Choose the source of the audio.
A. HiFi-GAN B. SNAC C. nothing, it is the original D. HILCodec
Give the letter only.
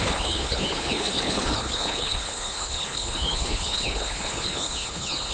D